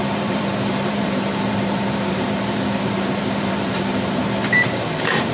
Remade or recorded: remade